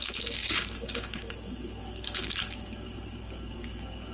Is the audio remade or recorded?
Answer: remade